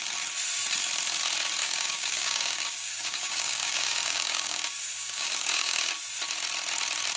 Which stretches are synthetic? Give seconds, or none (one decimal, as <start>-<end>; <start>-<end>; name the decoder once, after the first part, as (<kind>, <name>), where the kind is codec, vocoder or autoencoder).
1.6-5.9 (codec, DAC)